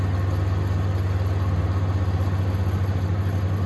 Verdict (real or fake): real